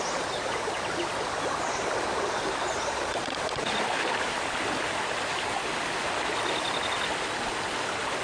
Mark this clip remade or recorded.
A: recorded